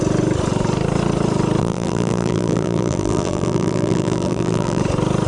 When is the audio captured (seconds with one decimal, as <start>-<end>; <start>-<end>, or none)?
0.0-1.6; 4.8-5.3